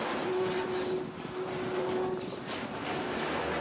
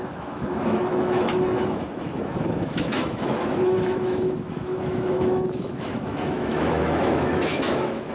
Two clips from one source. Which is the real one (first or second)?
first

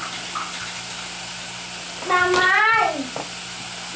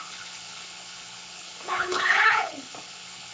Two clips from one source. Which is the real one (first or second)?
first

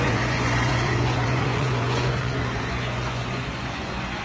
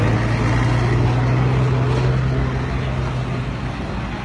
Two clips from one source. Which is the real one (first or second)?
second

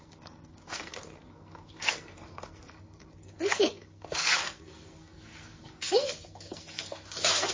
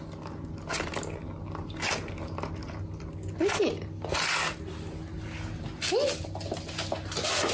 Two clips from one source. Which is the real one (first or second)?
second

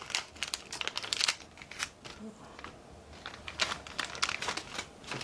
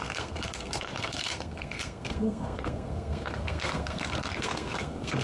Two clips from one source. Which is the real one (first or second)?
first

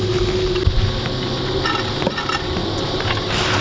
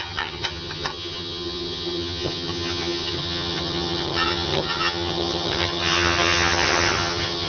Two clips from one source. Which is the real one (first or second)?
first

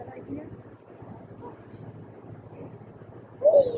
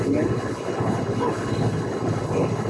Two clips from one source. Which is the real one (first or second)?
first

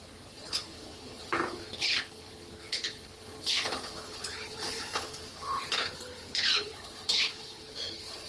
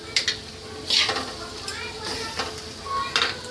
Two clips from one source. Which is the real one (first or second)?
second